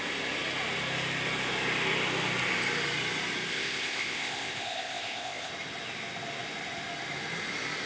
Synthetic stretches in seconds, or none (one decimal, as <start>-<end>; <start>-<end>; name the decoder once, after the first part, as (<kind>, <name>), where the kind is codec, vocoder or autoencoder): 3.5-5.5 (codec, ZipCodec)